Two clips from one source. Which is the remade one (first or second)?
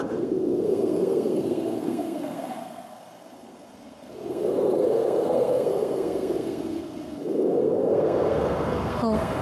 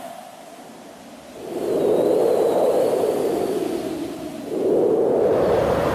first